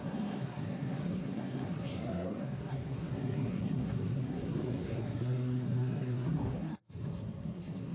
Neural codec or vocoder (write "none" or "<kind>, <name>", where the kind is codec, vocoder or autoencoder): codec, SNAC